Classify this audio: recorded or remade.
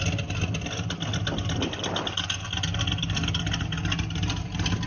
recorded